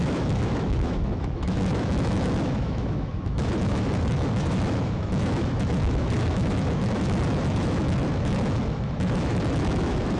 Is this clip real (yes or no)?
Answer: no